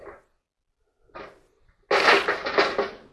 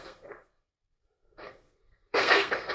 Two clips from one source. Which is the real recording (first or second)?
first